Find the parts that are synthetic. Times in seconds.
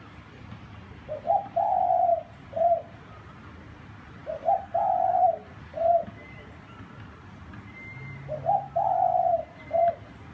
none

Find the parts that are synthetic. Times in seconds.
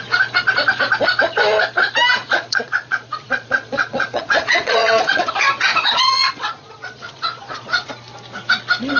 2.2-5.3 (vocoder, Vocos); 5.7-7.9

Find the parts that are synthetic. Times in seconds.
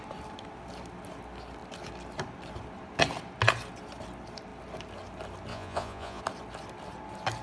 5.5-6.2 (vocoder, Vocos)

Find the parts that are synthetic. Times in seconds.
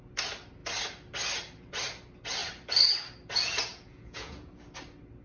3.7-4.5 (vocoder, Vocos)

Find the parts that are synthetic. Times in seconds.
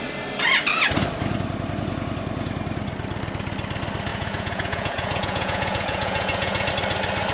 4.1-6.7 (vocoder, Vocos)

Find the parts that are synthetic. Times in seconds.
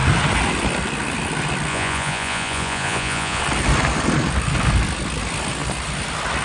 1.7-3.4 (vocoder, Vocos)